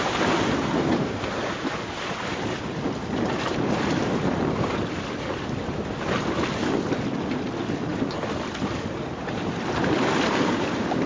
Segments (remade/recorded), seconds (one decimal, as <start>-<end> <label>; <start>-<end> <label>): 0.0-11.1 recorded